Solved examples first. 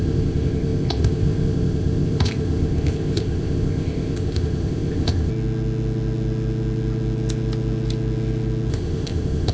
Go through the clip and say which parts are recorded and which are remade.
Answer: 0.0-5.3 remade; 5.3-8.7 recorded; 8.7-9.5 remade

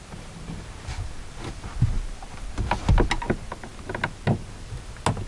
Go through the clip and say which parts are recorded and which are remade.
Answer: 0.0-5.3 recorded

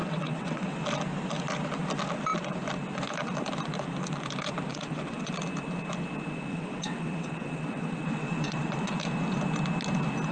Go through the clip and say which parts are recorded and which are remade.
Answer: 0.0-0.8 remade; 0.8-4.7 recorded; 4.7-5.3 remade; 5.3-6.5 recorded; 6.5-8.9 remade; 8.9-10.3 recorded

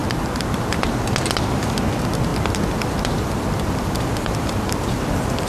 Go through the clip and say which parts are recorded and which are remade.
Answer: 0.0-1.0 remade; 1.0-2.3 recorded; 2.3-3.9 remade; 3.9-5.5 recorded